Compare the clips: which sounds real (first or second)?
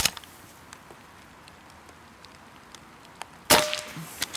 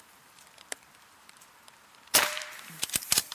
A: first